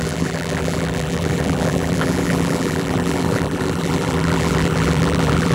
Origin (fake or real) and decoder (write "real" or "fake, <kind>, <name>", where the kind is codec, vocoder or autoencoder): fake, vocoder, BigVGAN v2